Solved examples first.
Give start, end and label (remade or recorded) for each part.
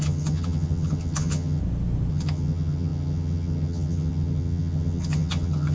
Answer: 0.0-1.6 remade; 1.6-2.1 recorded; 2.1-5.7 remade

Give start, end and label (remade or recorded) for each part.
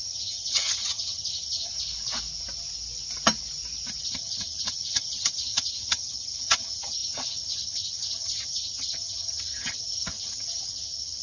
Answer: 0.0-1.7 remade; 1.7-4.0 recorded; 4.0-11.2 remade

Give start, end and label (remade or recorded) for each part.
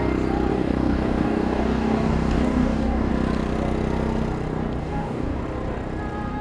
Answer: 0.0-0.5 recorded; 0.5-3.1 remade; 3.1-4.8 recorded; 4.8-5.4 remade; 5.4-6.4 recorded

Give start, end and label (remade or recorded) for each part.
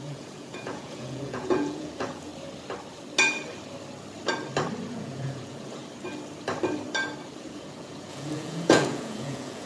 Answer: 0.0-2.3 remade; 2.3-4.9 recorded; 4.9-5.8 remade; 5.8-7.4 recorded; 7.4-9.7 remade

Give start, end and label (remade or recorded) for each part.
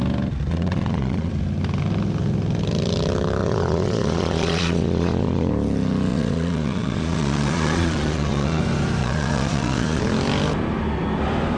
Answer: 0.0-0.5 recorded; 0.5-1.3 remade; 1.3-3.4 recorded; 3.4-5.5 remade; 5.5-6.1 recorded; 6.1-8.6 remade; 8.6-9.0 recorded; 9.0-10.0 remade; 10.0-11.6 recorded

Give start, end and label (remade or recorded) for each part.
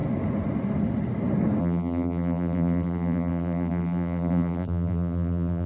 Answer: 0.0-1.6 recorded; 1.6-5.7 remade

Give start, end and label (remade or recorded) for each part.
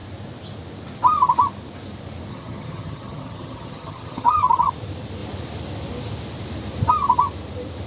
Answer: 0.0-2.3 recorded; 2.3-4.7 remade; 4.7-7.9 recorded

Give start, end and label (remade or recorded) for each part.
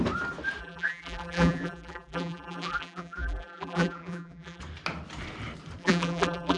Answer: 0.0-0.6 recorded; 0.6-4.6 remade; 4.6-5.8 recorded; 5.8-6.6 remade